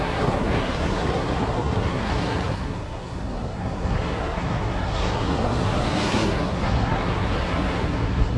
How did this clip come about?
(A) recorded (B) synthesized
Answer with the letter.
B